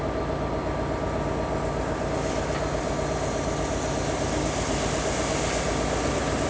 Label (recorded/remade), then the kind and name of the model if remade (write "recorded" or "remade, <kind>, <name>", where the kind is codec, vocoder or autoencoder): recorded